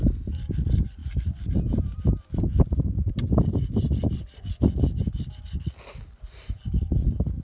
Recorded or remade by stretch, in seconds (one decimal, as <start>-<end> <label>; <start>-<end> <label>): 0.0-7.4 recorded